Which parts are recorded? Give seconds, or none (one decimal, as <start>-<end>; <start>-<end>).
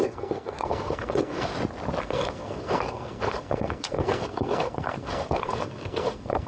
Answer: 1.5-2.0